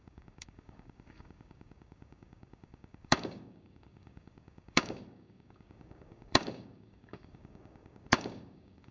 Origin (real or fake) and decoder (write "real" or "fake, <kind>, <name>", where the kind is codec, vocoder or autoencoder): fake, codec, DAC